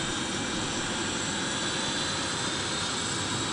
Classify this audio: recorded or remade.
recorded